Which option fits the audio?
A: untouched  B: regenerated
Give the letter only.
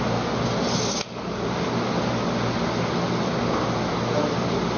A